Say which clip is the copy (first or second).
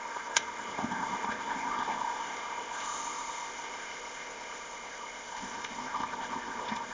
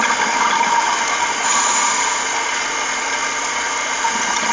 first